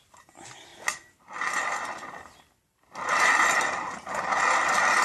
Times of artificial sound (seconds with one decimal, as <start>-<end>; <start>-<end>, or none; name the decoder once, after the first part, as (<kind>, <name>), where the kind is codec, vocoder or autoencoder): none